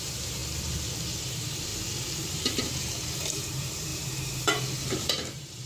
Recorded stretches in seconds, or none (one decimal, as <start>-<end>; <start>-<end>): 0.4-1.2; 1.7-2.2